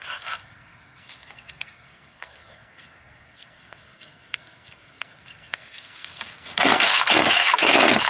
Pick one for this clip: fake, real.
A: fake